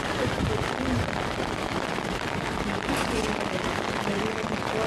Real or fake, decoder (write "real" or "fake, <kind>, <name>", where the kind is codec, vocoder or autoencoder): real